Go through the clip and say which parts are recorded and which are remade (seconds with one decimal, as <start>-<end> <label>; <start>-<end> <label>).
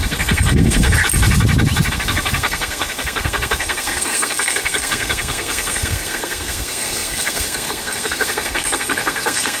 0.0-1.0 remade; 1.0-1.9 recorded; 1.9-9.6 remade